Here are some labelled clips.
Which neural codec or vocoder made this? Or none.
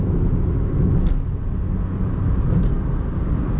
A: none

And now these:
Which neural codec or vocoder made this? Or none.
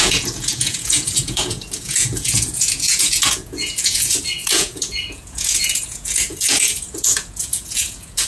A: vocoder, Vocos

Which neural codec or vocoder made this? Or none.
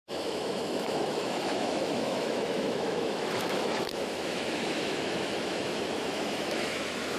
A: autoencoder, DAC-VAE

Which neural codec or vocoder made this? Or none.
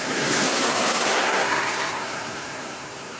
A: codec, SNAC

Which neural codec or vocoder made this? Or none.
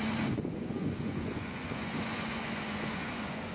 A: vocoder, Vocos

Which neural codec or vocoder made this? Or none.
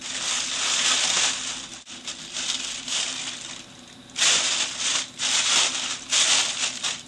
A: none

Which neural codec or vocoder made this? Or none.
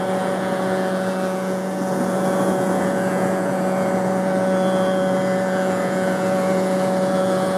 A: vocoder, Vocos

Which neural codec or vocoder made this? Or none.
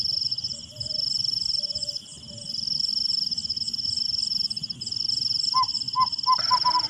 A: none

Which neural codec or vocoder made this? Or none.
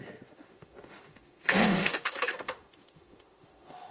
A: autoencoder, DAC-VAE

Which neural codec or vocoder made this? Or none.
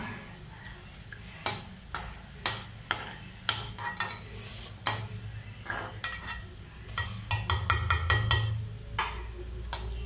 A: none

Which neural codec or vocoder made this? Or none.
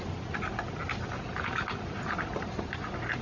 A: none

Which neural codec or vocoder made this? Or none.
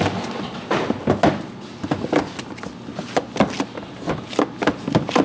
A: none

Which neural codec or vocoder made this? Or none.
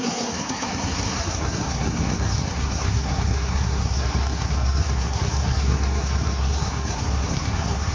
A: codec, SNAC